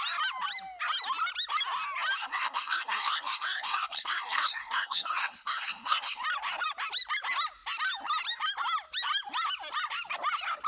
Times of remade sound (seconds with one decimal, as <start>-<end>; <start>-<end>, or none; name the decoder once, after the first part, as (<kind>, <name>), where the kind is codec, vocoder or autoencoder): 2.2-6.2 (codec, SNAC)